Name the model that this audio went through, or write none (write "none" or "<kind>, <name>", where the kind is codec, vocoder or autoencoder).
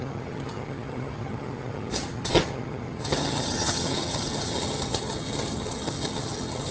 vocoder, HiFi-GAN